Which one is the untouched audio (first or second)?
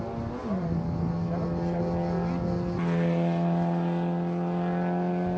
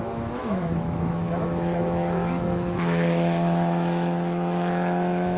first